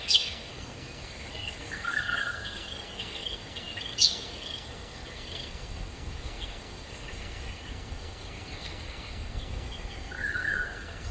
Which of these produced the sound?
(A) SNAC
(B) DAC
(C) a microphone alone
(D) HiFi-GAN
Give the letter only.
A